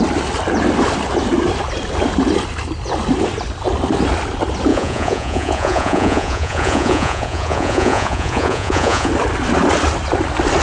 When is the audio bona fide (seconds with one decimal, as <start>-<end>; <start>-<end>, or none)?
0.0-4.7; 9.1-10.6